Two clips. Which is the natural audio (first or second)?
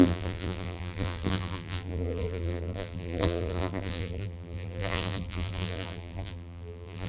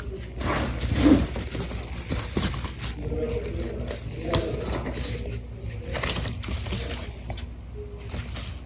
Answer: second